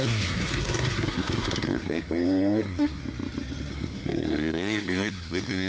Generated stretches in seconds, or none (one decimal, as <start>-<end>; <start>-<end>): 0.0-3.0; 3.7-5.7